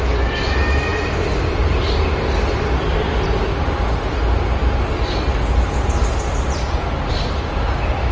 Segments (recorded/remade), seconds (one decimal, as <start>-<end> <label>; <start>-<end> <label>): 0.0-8.1 recorded